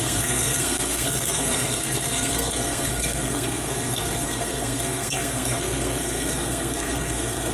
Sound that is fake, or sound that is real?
fake